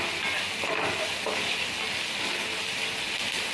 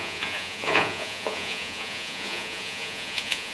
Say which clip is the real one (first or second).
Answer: first